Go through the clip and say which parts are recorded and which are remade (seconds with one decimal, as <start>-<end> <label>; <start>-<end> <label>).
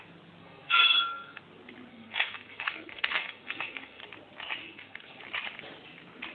0.0-0.4 recorded; 0.4-1.4 remade; 1.4-1.9 recorded; 1.9-4.0 remade; 4.0-4.6 recorded; 4.6-5.2 remade; 5.2-6.3 recorded